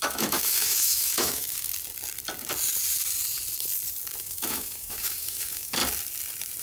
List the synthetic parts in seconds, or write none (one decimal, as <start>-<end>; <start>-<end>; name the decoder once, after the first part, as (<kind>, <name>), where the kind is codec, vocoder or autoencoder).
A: 0.0-1.7 (autoencoder, DAC-VAE); 4.2-5.8